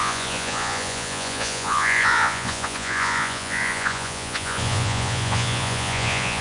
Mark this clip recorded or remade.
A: remade